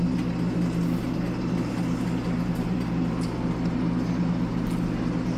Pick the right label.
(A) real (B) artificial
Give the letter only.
A